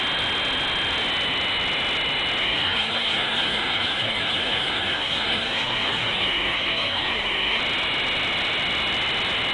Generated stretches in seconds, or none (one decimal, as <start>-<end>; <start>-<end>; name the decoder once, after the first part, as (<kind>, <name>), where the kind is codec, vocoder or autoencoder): 2.4-7.6 (codec, SNAC)